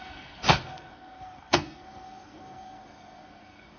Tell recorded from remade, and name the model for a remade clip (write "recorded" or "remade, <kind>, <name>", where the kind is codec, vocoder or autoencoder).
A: remade, codec, SNAC